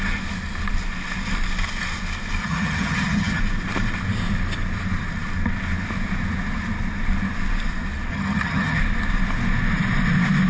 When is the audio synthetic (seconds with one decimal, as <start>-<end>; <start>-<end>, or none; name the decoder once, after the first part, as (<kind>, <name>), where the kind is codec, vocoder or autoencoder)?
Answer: 2.4-3.4 (vocoder, HiFi-GAN); 8.1-8.8